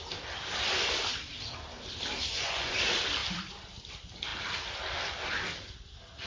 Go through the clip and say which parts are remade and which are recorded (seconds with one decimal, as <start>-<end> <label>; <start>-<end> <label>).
0.0-2.2 recorded; 2.2-2.8 remade; 2.8-6.3 recorded